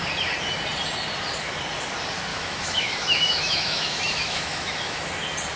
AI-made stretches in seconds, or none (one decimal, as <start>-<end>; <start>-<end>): 2.3-5.0